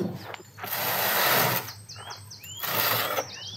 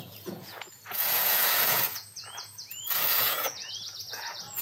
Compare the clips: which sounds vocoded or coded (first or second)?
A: second